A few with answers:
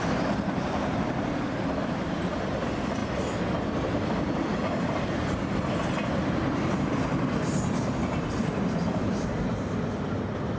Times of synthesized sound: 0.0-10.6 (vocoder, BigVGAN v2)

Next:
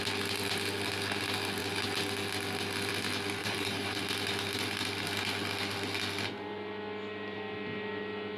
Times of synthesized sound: 3.4-4.0 (vocoder, BigVGAN v2)

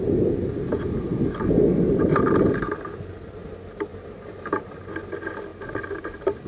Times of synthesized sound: 3.9-4.9 (vocoder, BigVGAN v2)

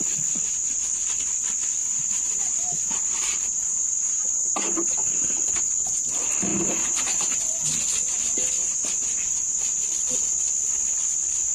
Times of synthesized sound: 1.8-6.0 (vocoder, BigVGAN v2); 6.5-7.8; 8.6-9.5